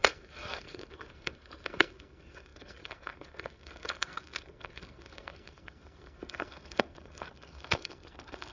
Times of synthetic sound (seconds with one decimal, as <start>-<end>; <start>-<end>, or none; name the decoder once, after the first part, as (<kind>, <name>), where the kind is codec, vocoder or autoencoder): 0.0-8.5 (codec, SNAC)